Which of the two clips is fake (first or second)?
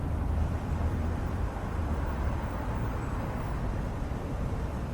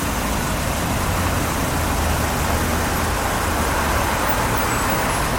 first